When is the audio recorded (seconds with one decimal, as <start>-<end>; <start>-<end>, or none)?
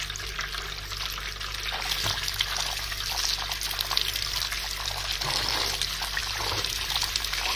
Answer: 0.0-6.2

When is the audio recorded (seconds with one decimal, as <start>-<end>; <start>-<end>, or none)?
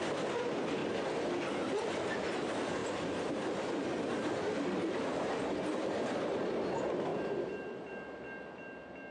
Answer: 0.0-0.8; 1.3-2.8; 4.0-9.1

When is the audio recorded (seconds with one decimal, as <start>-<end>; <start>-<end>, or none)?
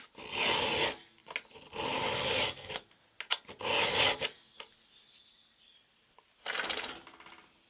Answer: 0.0-7.7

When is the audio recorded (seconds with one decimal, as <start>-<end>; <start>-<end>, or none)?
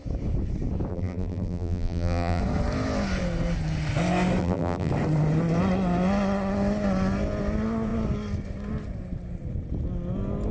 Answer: 0.0-0.9; 2.4-4.4; 4.9-10.5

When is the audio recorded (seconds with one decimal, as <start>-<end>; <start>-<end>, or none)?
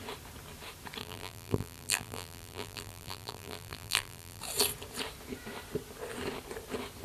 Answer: 0.0-1.0; 4.4-7.0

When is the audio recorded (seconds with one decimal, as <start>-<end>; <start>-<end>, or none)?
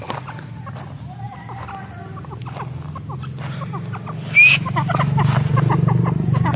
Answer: 0.0-6.6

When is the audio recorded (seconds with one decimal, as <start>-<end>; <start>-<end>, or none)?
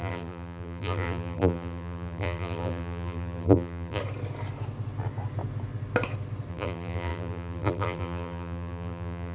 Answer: 4.0-6.5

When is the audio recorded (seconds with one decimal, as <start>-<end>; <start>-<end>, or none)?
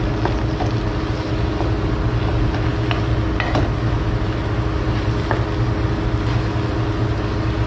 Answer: 0.0-7.7